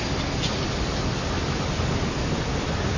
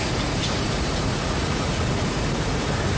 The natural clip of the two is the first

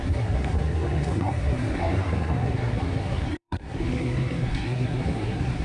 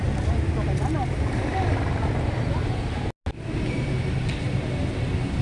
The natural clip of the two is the second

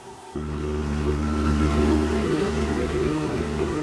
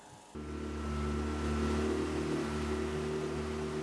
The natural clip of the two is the second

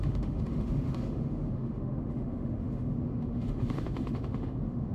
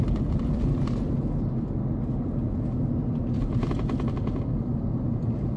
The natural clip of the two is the second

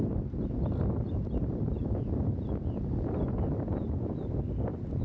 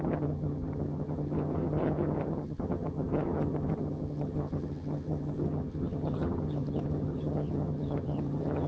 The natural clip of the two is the first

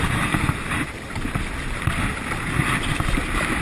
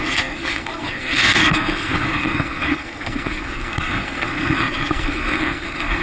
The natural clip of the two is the first